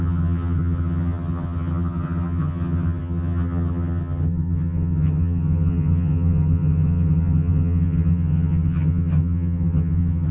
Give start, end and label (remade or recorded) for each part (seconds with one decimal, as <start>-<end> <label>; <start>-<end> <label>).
0.0-10.3 remade

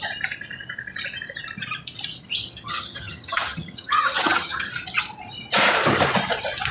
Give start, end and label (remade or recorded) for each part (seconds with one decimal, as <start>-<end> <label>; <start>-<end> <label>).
0.0-2.4 recorded; 2.4-4.7 remade; 4.7-6.7 recorded

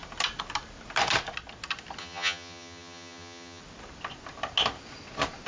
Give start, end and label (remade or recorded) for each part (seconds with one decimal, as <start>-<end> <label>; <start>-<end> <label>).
0.0-2.0 recorded; 2.0-3.6 remade; 3.6-5.5 recorded